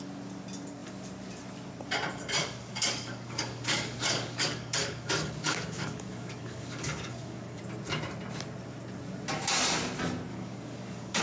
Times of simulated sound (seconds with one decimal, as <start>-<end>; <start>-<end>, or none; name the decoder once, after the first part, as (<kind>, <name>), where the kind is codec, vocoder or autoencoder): 2.4-7.6 (codec, DAC); 10.3-11.2